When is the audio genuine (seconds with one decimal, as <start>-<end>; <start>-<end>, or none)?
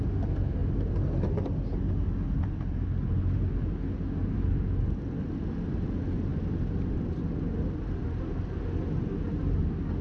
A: 0.0-10.0